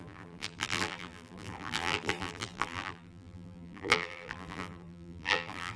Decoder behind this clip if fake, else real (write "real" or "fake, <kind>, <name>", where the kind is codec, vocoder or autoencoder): fake, vocoder, BigVGAN v2